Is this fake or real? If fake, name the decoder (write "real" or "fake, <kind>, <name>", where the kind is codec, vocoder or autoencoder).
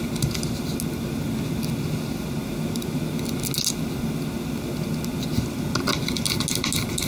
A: real